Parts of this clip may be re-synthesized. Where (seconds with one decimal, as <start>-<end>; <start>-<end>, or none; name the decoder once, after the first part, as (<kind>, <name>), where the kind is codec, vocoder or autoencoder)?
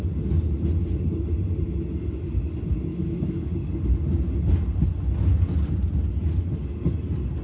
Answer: 2.9-3.4 (autoencoder, DAC-VAE)